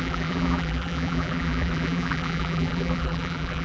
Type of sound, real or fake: fake